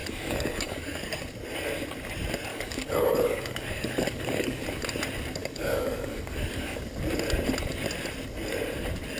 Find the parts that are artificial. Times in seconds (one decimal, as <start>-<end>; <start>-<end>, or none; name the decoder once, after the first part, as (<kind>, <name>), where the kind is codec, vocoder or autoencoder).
0.0-1.2 (codec, DAC); 2.5-4.6; 5.4-6.8